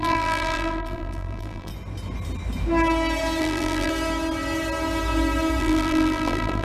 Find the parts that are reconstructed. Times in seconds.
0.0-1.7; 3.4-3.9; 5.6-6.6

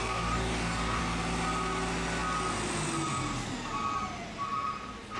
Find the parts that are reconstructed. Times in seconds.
0.0-1.0

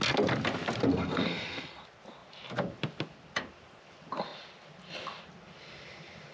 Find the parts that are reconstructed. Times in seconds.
0.9-1.8